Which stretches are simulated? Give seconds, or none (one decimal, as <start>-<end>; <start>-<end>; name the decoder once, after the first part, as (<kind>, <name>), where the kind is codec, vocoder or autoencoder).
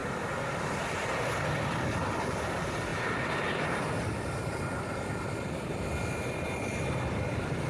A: none